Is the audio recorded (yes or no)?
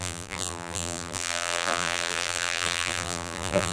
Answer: no